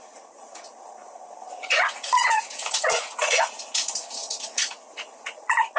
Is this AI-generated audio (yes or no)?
yes